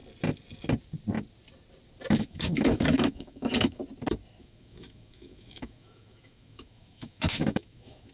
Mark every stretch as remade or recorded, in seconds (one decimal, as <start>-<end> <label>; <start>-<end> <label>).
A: 0.0-2.1 recorded; 2.1-3.8 remade; 3.8-4.4 recorded; 4.4-8.1 remade